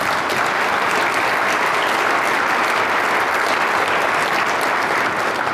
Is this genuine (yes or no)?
yes